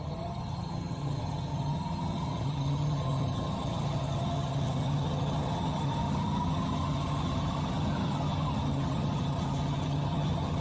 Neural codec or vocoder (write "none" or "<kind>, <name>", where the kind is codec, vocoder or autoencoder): vocoder, HiFi-GAN